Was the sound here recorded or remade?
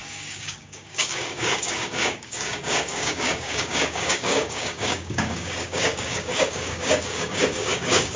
remade